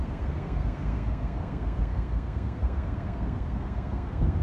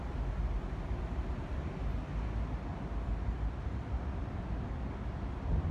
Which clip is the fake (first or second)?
first